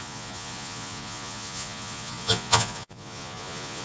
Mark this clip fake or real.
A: fake